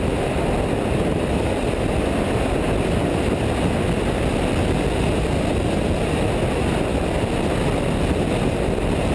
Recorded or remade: recorded